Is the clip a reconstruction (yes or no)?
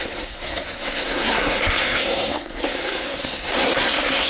yes